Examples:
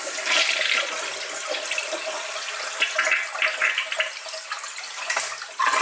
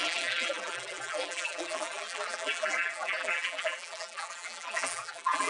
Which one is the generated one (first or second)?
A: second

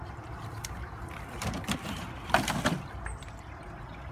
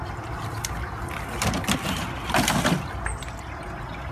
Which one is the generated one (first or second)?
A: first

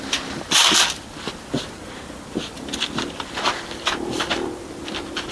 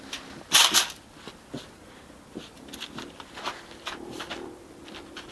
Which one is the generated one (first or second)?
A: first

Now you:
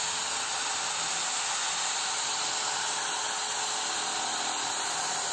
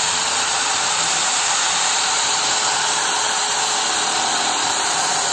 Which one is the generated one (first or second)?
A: second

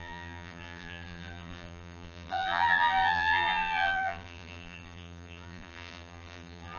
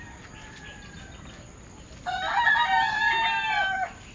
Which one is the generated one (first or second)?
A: first